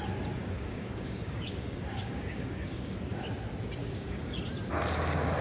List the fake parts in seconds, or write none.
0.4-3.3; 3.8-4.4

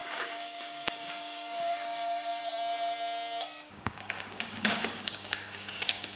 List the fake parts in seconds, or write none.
0.0-2.4; 3.7-6.2

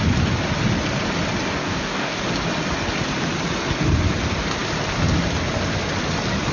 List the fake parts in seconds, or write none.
1.6-2.2